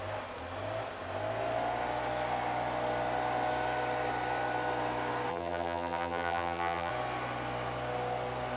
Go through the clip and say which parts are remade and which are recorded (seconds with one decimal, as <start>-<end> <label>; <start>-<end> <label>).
0.0-5.3 recorded; 5.3-6.9 remade; 6.9-8.6 recorded